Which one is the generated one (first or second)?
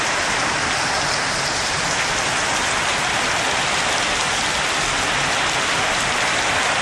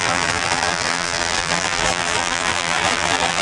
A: second